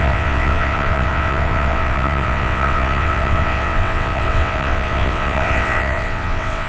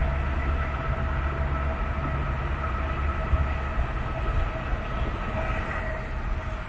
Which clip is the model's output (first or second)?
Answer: first